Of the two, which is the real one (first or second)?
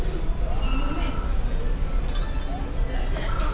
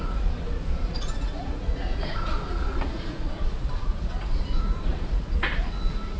first